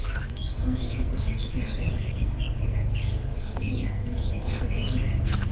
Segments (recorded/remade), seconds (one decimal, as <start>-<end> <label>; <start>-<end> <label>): 0.0-5.5 remade